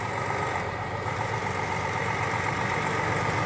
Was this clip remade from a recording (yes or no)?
no